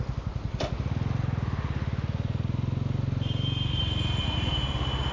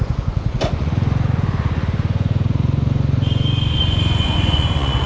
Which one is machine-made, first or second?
second